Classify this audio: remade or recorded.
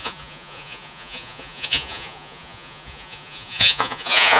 remade